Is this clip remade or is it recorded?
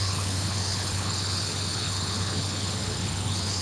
remade